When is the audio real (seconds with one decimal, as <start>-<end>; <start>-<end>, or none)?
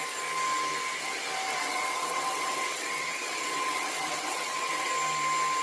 0.0-1.5; 4.9-5.6